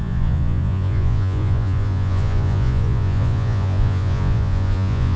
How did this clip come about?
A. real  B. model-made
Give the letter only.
B